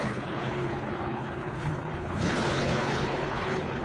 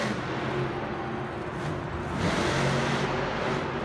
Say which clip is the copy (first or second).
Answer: first